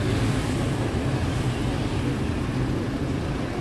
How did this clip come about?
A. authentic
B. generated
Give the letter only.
A